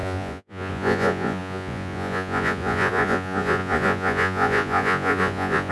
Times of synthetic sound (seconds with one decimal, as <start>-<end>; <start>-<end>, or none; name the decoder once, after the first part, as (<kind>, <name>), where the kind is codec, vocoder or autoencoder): 0.0-5.7 (vocoder, Vocos)